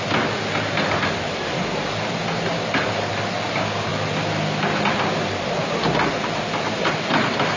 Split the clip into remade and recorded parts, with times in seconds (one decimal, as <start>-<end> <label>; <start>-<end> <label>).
0.0-7.6 recorded